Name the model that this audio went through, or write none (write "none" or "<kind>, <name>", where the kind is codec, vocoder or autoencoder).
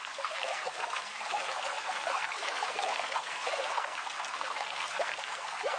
codec, SNAC